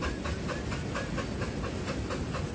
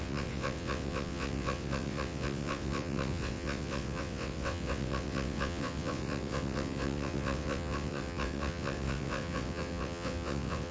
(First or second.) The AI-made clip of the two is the second